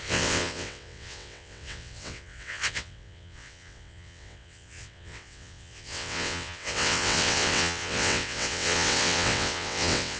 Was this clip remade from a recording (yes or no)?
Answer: yes